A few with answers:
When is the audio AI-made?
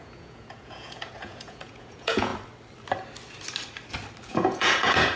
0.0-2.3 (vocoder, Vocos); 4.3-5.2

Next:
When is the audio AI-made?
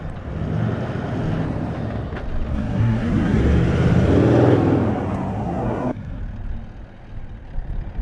2.5-3.4 (codec, SNAC); 5.3-6.2